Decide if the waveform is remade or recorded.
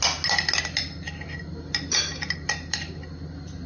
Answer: recorded